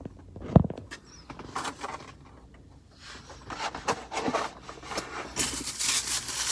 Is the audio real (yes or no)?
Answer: yes